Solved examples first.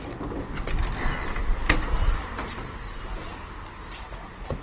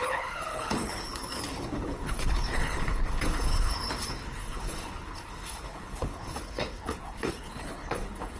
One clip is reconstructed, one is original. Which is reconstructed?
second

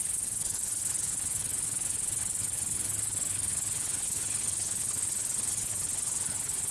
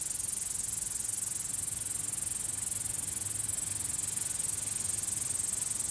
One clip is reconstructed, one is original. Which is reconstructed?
first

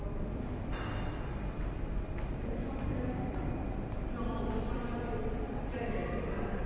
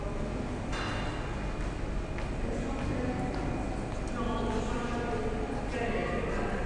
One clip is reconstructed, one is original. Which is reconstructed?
first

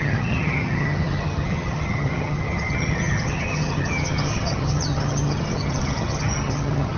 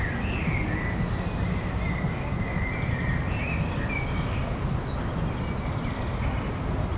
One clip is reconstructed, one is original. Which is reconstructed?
first